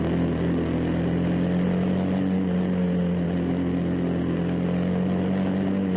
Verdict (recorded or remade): recorded